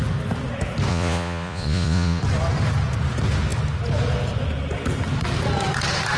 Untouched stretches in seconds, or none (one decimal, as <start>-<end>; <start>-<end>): 0.0-0.9; 2.2-6.2